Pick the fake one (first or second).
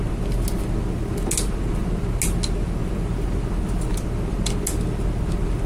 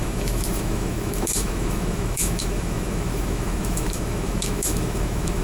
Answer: second